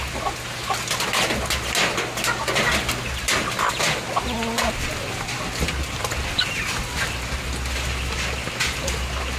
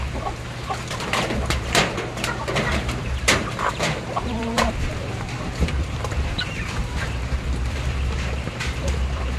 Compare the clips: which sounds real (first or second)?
first